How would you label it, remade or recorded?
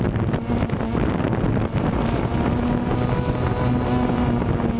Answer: recorded